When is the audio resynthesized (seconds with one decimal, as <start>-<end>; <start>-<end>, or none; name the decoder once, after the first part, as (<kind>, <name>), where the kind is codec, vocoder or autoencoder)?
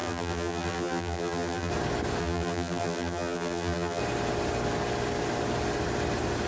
0.0-1.7 (vocoder, BigVGAN v2); 2.2-4.0